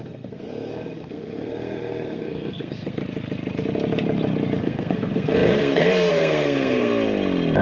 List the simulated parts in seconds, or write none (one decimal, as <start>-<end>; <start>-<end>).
0.0-3.0; 4.6-6.9